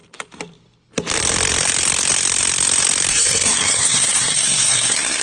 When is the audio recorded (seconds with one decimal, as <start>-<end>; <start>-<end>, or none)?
0.0-3.1